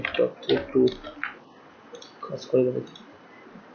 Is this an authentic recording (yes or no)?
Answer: yes